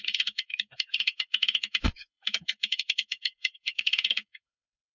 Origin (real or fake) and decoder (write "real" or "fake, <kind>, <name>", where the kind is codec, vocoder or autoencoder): fake, codec, SNAC